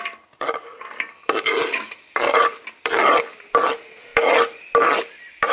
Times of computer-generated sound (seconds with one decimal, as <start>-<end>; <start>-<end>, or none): none